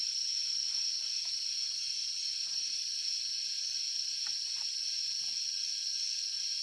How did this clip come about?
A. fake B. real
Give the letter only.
B